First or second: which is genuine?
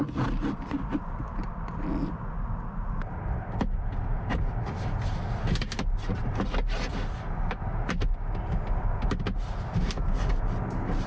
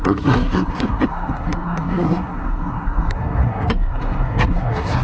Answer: first